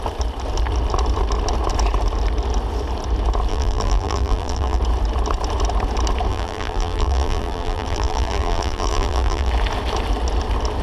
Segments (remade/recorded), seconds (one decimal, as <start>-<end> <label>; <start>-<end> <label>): 0.0-3.5 recorded; 3.5-4.8 remade; 4.8-6.3 recorded; 6.3-9.5 remade; 9.5-10.8 recorded